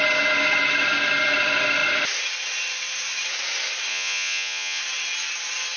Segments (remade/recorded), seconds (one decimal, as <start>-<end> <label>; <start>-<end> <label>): 0.0-3.9 recorded; 3.9-4.8 remade; 4.8-5.8 recorded